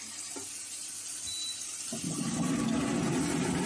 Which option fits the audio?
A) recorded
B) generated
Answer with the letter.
A